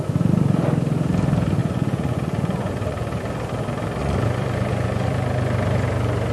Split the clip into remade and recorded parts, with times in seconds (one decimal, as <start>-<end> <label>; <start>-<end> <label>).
0.0-1.6 recorded; 1.6-3.2 remade; 3.2-4.0 recorded; 4.0-5.1 remade; 5.1-6.3 recorded